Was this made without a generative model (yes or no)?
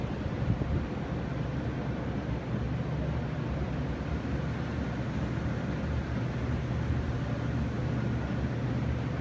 yes